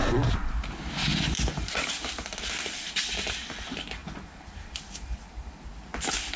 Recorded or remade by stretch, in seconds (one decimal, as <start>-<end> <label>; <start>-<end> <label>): 0.0-6.4 recorded